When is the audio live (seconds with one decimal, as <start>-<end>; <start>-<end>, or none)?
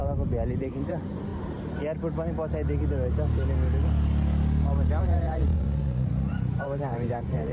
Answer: 0.0-0.8; 1.3-5.0